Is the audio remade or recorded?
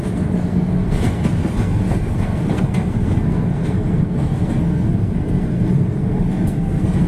remade